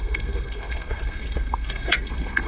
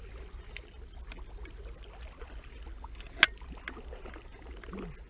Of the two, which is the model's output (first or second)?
first